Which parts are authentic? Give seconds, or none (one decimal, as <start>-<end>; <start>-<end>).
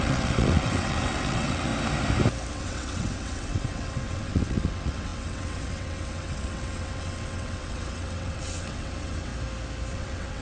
1.7-2.5; 9.3-9.9